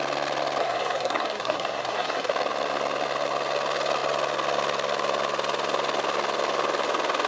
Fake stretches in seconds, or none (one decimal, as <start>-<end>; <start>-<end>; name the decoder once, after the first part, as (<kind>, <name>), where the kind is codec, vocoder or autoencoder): 0.6-2.3 (codec, SNAC)